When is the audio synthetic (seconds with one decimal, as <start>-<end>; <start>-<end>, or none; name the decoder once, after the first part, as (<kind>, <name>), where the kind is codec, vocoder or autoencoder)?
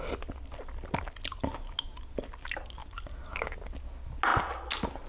none